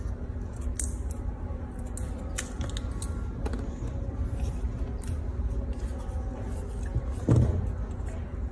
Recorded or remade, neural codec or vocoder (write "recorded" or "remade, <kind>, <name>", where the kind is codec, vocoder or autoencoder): recorded